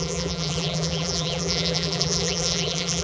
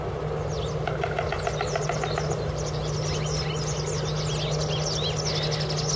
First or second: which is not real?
first